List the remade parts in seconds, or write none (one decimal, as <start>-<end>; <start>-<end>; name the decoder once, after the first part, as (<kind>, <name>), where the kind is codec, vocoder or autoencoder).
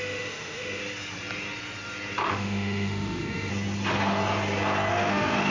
0.0-0.8 (autoencoder, DAC-VAE); 2.3-3.5; 4.9-5.5